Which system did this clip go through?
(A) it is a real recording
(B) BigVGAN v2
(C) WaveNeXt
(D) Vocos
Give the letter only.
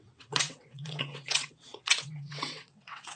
C